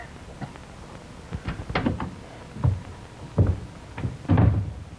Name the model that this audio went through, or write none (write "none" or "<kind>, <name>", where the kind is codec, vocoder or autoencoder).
none